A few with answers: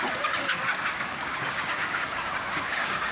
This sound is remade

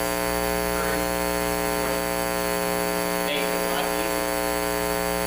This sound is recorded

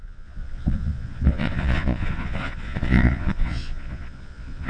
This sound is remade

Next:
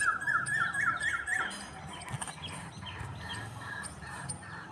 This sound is recorded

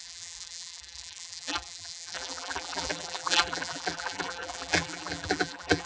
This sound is remade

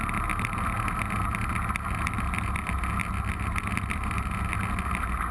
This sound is recorded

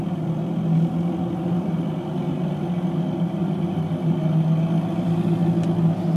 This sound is recorded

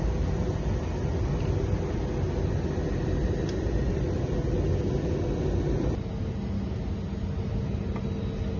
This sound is recorded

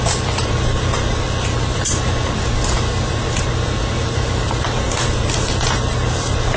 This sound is remade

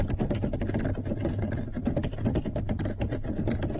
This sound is recorded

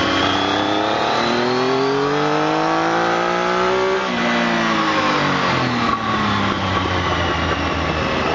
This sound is recorded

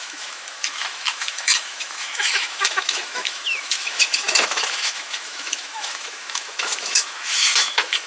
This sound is remade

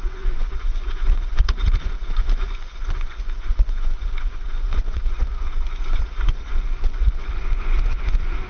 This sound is remade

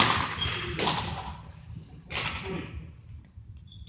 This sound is recorded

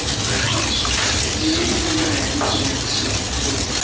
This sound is recorded